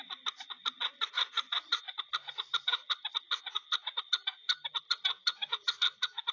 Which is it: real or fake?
real